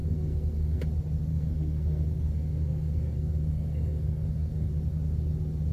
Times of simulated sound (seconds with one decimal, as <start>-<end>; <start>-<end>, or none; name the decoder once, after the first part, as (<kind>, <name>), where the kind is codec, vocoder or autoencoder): 0.0-0.8 (codec, SNAC); 1.3-4.7

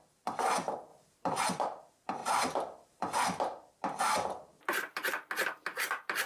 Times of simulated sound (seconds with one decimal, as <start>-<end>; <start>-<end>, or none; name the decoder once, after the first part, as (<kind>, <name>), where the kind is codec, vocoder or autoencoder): none

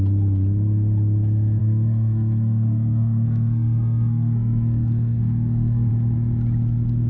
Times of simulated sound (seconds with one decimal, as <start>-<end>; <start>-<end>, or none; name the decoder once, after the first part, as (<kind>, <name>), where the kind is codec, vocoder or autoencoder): 1.6-5.9 (codec, SNAC)

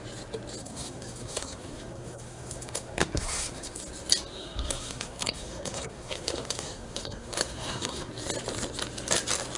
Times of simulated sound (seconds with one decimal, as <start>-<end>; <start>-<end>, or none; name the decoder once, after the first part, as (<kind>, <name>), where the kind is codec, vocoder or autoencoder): 0.6-3.8 (codec, SNAC); 4.4-8.1

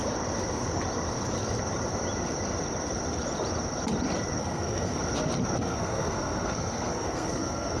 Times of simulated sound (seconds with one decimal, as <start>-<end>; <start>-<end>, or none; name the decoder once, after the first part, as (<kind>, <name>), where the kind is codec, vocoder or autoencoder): 4.4-5.0 (codec, SNAC); 5.6-7.8

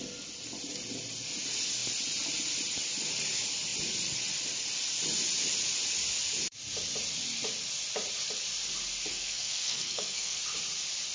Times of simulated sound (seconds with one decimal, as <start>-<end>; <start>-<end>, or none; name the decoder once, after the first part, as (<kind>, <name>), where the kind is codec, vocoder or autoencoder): 9.1-10.4 (codec, SNAC)

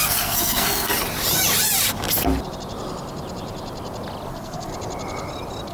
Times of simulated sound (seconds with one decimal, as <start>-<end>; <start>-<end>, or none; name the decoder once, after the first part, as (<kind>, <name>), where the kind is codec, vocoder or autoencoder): 0.0-0.9 (codec, SNAC); 4.3-4.7

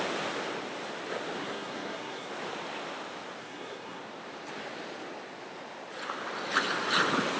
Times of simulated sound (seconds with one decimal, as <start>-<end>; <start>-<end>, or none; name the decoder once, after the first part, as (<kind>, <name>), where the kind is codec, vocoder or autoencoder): 1.4-2.3 (codec, SNAC); 3.4-4.0